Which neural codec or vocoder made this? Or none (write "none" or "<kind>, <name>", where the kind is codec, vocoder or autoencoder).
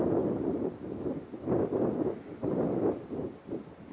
none